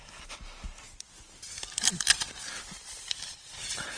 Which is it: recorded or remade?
remade